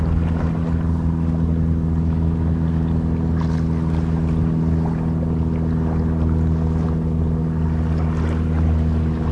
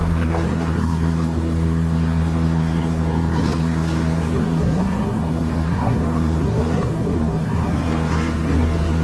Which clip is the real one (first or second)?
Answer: first